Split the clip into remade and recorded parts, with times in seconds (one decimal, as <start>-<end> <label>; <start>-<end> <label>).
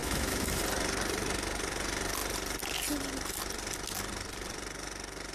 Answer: 0.0-0.6 remade; 0.6-5.3 recorded